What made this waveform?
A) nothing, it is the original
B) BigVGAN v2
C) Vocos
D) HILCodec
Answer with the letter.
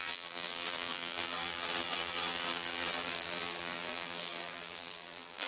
B